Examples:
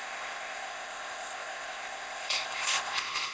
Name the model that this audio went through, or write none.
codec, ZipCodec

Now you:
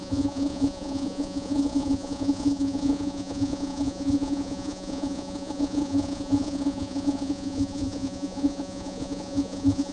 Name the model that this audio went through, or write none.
vocoder, Vocos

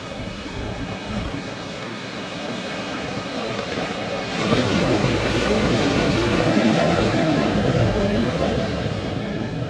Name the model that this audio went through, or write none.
codec, SNAC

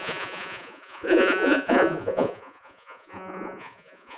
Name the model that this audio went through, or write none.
vocoder, Vocos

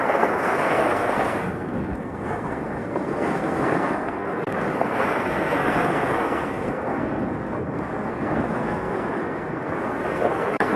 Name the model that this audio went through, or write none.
codec, SNAC